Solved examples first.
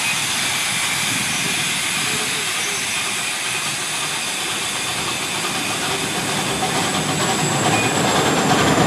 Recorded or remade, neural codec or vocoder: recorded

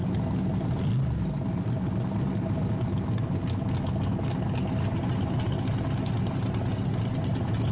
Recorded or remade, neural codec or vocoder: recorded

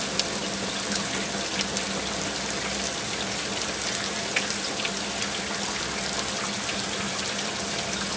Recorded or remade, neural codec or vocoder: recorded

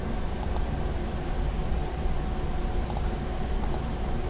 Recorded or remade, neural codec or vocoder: recorded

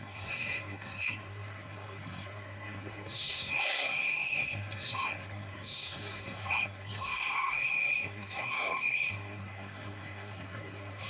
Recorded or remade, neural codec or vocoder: remade, codec, SNAC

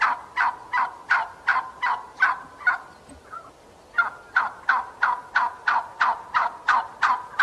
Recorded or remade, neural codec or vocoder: recorded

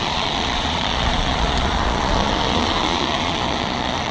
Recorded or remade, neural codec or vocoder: remade, vocoder, Vocos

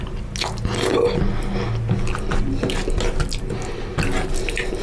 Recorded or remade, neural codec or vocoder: recorded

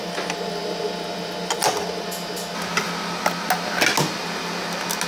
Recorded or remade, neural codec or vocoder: recorded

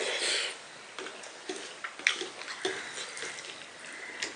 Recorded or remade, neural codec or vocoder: recorded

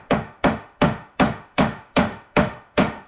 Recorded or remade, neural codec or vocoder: remade, autoencoder, DAC-VAE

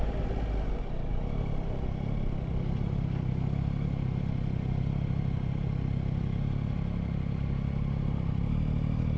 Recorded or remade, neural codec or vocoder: recorded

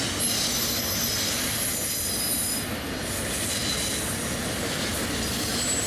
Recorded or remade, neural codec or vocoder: recorded